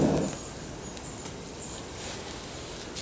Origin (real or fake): real